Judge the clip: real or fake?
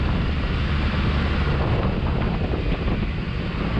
real